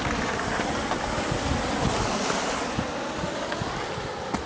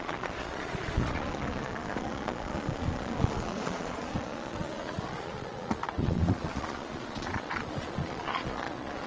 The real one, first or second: first